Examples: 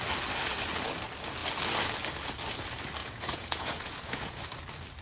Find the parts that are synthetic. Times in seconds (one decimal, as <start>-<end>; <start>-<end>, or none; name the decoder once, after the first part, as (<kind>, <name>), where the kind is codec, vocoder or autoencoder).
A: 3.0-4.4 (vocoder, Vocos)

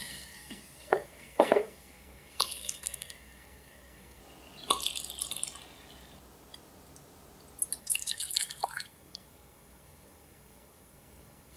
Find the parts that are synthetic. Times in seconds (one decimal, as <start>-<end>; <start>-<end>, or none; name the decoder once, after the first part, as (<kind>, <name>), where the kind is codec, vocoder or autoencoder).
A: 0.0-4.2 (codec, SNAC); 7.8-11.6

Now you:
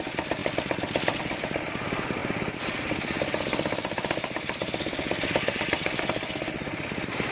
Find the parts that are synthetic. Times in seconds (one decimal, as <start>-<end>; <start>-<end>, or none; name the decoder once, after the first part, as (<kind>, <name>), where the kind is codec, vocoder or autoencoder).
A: none

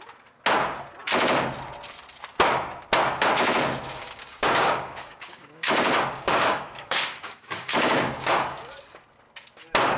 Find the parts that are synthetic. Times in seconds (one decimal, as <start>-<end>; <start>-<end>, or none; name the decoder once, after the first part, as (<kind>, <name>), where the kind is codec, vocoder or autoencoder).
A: 4.0-8.8 (codec, DAC)